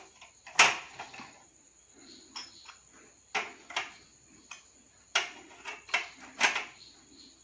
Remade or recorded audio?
recorded